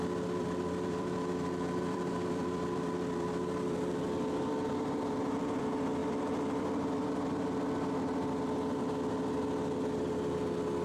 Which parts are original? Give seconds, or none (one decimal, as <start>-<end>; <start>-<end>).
0.0-0.4; 5.6-6.0; 7.4-10.8